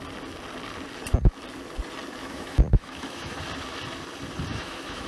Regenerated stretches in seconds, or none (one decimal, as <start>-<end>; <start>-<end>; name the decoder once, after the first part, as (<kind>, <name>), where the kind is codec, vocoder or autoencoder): 2.2-3.4 (autoencoder, DAC-VAE); 4.5-5.1